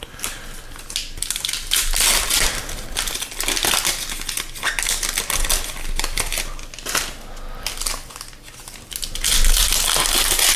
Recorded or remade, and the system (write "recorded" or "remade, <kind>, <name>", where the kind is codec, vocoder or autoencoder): recorded